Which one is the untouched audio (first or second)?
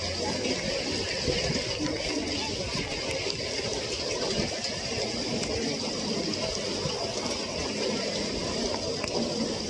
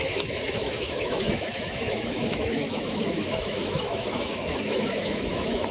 first